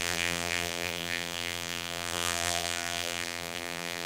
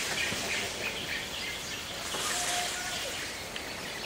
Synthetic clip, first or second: first